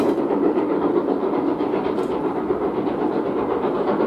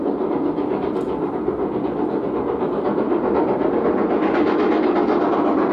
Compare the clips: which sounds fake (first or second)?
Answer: first